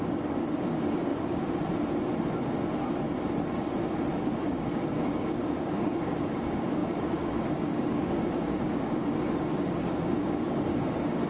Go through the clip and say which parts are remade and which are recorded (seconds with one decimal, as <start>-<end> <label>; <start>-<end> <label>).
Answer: 0.0-1.1 remade; 1.1-4.2 recorded; 4.2-11.3 remade